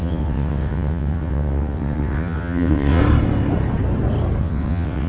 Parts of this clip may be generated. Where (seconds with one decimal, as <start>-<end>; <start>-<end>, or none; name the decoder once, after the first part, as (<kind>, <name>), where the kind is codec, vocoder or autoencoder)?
0.0-3.0 (vocoder, WaveNeXt); 4.4-5.1

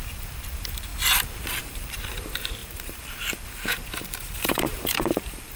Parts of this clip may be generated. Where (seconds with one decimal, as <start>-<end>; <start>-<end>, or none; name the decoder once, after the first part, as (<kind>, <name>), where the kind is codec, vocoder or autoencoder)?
0.0-0.9 (vocoder, BigVGAN v2); 1.6-5.6

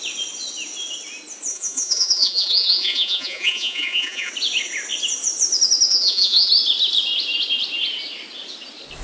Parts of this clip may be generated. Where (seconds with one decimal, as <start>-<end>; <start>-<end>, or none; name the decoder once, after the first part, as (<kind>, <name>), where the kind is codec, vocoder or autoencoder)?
1.5-4.3 (vocoder, Vocos); 5.9-6.5

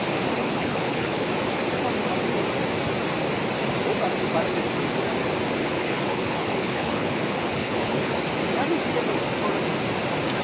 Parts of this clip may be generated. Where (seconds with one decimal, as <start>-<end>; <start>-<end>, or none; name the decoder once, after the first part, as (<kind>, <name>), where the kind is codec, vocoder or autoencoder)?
0.4-1.3 (codec, HILCodec); 5.6-8.1

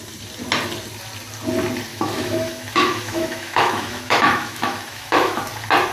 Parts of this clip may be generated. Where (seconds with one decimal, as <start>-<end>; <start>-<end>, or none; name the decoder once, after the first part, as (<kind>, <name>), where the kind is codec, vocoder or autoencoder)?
1.9-5.4 (autoencoder, DAC-VAE)